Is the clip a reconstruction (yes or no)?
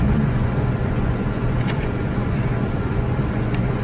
yes